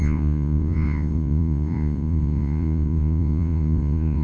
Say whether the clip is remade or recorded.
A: remade